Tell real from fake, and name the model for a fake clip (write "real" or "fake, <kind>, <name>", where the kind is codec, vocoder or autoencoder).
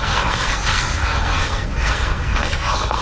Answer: fake, codec, SNAC